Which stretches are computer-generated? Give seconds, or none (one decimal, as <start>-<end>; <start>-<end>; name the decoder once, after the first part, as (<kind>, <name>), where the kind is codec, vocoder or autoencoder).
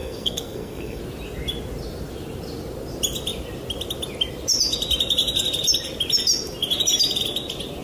0.0-1.0 (codec, SNAC)